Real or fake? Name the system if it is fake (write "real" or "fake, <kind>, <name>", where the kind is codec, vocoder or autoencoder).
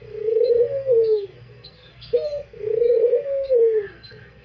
fake, codec, SNAC